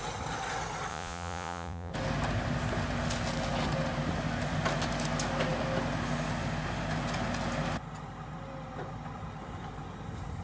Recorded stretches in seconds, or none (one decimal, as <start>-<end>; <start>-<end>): 0.0-0.9; 1.9-10.4